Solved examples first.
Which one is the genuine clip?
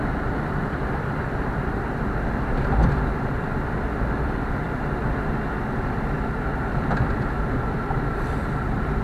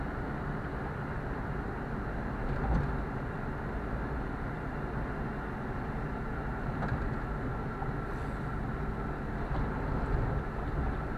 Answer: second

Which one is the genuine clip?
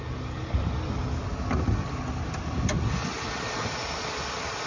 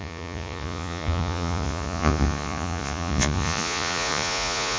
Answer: first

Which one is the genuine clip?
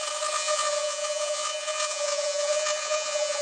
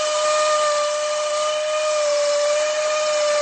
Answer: second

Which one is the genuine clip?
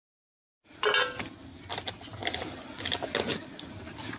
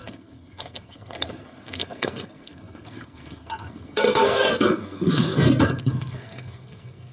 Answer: first